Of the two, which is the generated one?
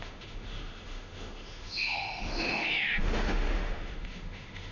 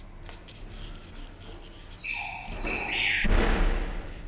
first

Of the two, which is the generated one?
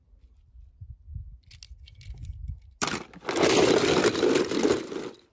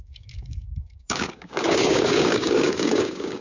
second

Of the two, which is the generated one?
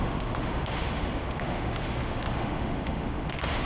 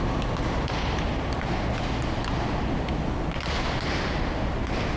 first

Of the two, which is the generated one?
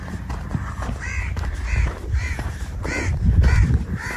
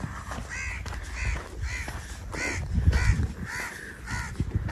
first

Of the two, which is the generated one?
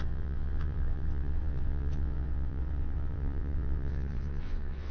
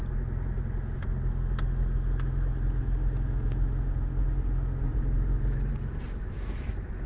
first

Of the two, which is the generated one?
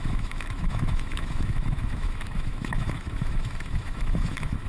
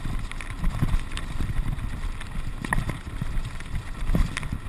first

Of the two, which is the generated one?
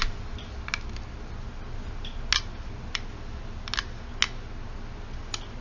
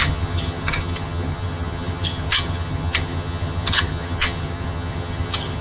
second